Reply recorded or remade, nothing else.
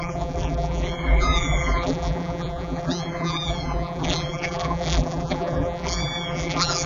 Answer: remade